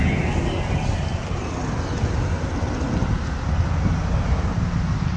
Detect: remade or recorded recorded